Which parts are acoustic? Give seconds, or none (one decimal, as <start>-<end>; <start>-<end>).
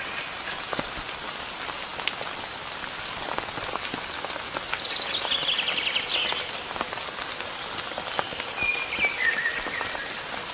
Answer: 0.0-10.5